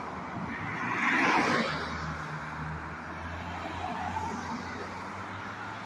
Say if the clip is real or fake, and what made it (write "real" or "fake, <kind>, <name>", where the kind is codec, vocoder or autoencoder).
real